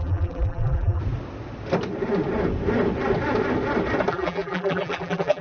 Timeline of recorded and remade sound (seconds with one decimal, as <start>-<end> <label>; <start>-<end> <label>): 0.0-1.0 remade; 1.0-4.1 recorded; 4.1-5.4 remade